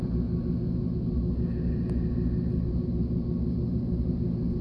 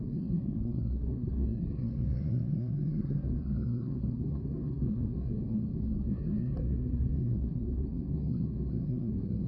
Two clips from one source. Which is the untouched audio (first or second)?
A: first